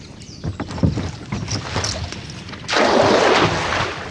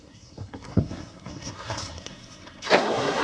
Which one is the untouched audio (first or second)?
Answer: first